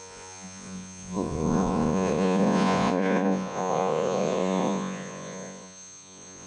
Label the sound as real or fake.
fake